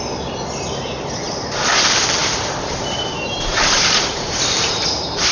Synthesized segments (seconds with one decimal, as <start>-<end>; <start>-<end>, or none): 2.2-5.3